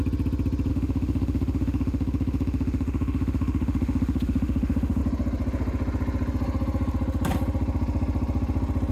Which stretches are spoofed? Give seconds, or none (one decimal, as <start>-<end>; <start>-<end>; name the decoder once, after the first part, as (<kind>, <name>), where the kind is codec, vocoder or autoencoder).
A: 0.7-5.0 (autoencoder, DAC-VAE)

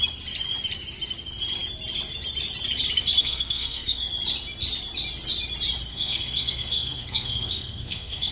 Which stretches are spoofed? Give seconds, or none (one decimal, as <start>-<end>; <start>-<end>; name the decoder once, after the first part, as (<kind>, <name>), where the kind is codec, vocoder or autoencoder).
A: 3.2-4.1 (codec, SNAC); 5.9-8.3